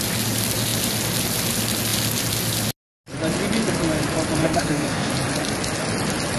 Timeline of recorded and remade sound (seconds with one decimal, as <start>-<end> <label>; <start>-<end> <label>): 0.0-4.4 recorded; 4.4-5.1 remade; 5.1-6.4 recorded